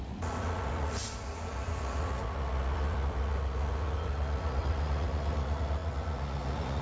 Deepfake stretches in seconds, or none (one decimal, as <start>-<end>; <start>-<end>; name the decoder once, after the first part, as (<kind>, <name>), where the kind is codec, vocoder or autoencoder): 0.0-6.8 (vocoder, Vocos)

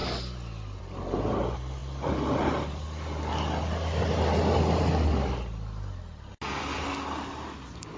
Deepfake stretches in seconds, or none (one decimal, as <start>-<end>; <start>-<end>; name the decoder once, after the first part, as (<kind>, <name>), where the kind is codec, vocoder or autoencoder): none

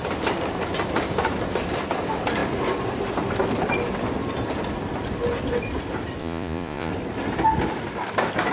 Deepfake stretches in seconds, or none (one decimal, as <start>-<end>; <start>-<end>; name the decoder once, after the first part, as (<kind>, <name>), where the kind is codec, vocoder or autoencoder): 6.2-6.9 (vocoder, Vocos)

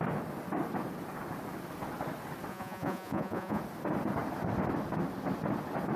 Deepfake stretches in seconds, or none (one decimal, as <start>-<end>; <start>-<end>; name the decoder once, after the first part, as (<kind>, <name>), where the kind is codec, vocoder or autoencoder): 2.5-3.6 (vocoder, Vocos)

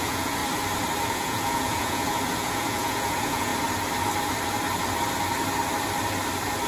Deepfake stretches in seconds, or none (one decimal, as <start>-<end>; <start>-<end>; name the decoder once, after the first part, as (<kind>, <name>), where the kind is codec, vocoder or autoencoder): 0.0-0.4 (vocoder, Vocos); 1.1-3.5